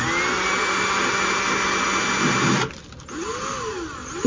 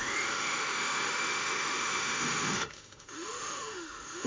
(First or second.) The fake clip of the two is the second